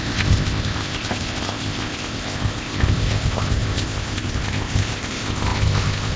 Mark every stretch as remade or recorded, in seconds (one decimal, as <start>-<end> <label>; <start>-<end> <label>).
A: 0.0-6.2 remade